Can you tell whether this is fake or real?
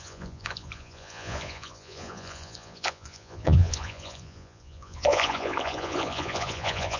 fake